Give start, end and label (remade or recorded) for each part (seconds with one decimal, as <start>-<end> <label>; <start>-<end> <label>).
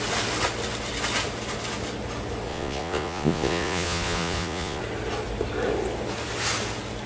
0.0-2.5 recorded; 2.5-4.8 remade; 4.8-7.1 recorded